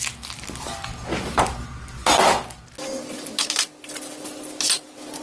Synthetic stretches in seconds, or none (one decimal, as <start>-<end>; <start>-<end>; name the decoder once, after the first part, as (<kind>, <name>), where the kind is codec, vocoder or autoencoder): none